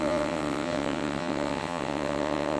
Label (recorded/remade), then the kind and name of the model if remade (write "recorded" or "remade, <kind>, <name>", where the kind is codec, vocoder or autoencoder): remade, vocoder, WaveNeXt